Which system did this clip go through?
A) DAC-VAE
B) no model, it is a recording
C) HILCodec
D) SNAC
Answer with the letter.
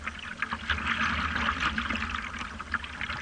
B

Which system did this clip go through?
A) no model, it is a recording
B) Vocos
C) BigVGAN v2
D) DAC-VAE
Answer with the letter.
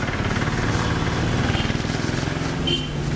A